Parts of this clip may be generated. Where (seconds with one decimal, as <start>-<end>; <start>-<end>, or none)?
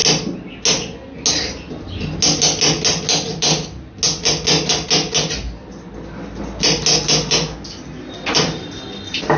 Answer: none